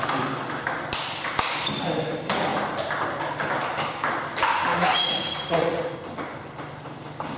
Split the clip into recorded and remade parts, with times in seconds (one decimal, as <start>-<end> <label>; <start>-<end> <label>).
0.0-4.7 recorded; 4.7-5.8 remade; 5.8-7.4 recorded